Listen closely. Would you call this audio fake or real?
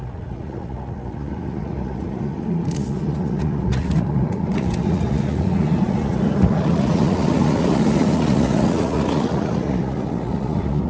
fake